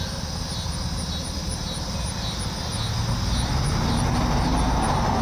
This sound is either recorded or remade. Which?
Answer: recorded